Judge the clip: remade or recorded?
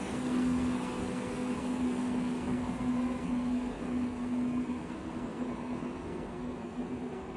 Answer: remade